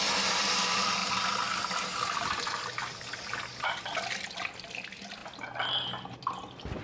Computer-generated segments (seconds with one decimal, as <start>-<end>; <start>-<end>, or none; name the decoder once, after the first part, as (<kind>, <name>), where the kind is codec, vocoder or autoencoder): none